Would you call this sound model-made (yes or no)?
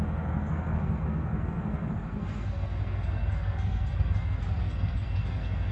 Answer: yes